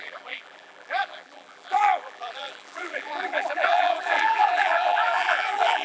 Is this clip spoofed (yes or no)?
yes